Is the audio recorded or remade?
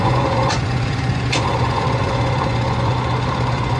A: remade